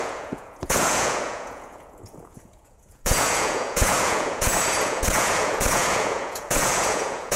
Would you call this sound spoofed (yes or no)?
yes